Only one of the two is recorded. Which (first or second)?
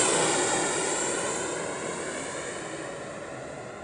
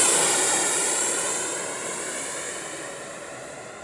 first